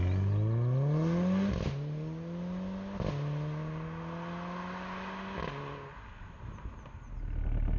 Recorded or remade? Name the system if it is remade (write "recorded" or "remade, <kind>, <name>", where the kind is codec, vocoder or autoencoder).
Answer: recorded